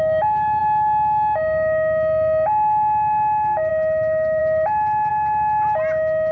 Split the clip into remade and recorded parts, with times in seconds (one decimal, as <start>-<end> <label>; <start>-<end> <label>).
0.0-6.3 recorded

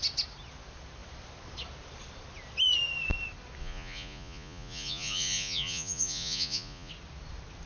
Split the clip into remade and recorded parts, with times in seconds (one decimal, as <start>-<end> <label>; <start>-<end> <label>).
0.0-3.6 recorded; 3.6-6.9 remade; 6.9-7.7 recorded

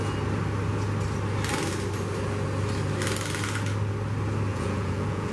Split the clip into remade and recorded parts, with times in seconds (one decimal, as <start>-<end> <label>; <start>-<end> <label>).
0.0-4.5 recorded; 4.5-5.3 remade